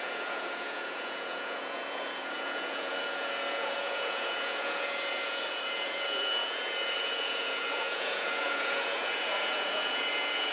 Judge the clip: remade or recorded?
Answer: remade